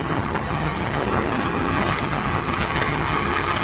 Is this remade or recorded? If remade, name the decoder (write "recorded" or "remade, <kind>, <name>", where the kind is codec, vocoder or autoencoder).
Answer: remade, vocoder, HiFi-GAN